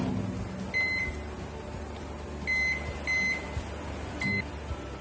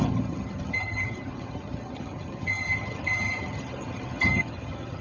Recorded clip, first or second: first